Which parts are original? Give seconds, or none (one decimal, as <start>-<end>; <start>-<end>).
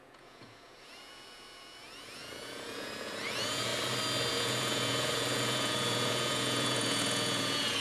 3.7-4.3